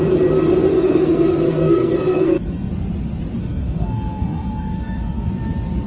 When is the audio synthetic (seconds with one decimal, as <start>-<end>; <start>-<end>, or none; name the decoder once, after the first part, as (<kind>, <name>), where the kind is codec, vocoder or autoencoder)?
0.7-2.7 (codec, SNAC); 3.4-5.3